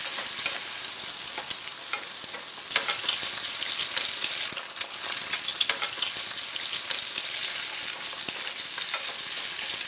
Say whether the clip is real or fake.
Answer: real